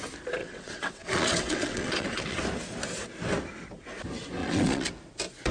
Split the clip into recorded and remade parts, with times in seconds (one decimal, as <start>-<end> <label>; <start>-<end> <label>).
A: 0.0-0.4 recorded; 0.4-2.4 remade; 2.4-4.4 recorded; 4.4-4.9 remade; 4.9-5.5 recorded